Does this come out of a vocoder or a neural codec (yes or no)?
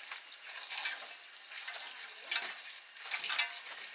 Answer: no